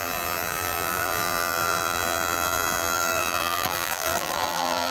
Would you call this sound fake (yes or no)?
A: yes